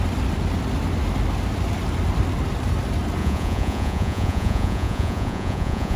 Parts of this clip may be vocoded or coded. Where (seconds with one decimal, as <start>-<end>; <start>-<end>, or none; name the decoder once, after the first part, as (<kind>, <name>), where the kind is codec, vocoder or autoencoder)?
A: 3.2-6.0 (vocoder, Vocos)